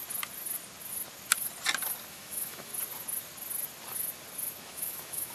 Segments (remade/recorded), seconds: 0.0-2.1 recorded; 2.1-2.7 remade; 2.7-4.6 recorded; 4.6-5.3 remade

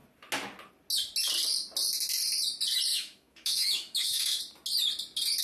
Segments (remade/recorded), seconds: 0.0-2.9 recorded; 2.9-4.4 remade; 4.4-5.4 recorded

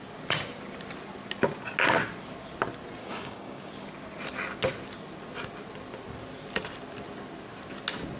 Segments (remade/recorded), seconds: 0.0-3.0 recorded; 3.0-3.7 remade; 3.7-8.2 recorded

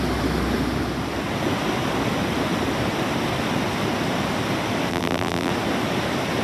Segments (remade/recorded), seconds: 0.0-4.9 recorded; 4.9-5.5 remade; 5.5-6.4 recorded

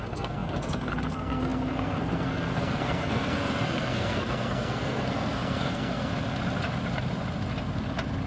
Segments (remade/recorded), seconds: 0.0-6.1 remade; 6.1-8.3 recorded

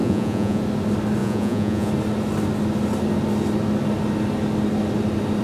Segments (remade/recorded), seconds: 0.0-0.6 remade; 0.6-1.2 recorded; 1.2-1.9 remade; 1.9-5.4 recorded

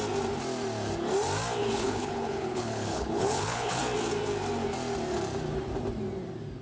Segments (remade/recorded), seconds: 0.0-1.6 recorded; 1.6-3.8 remade; 3.8-6.6 recorded

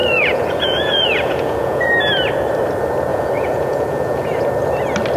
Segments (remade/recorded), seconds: 0.0-1.9 remade; 1.9-3.1 recorded; 3.1-4.4 remade; 4.4-5.2 recorded